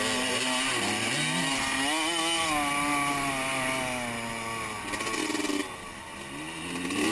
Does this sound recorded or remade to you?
recorded